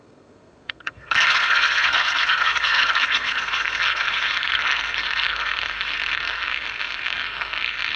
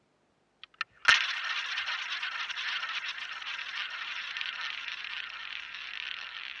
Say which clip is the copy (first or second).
first